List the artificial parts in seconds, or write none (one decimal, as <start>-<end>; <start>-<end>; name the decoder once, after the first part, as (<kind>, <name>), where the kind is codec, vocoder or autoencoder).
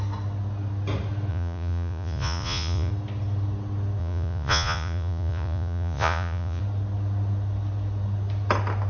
1.3-2.9 (vocoder, Vocos); 4.0-6.6